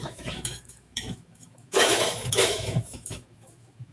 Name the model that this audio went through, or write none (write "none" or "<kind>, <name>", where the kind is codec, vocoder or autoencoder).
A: autoencoder, DAC-VAE